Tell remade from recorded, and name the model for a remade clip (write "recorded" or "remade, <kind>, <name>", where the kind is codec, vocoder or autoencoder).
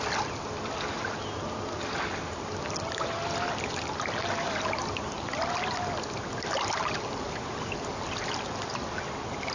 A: recorded